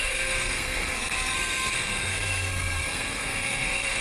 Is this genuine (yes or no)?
no